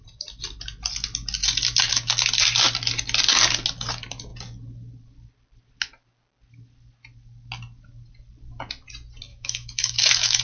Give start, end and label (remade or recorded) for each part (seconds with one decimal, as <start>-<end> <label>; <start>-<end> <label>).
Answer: 0.0-9.3 recorded; 9.3-10.4 remade